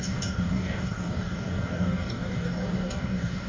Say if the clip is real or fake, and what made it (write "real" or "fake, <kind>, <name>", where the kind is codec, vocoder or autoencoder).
fake, codec, DAC